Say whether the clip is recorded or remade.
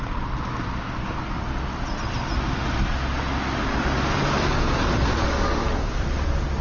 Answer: recorded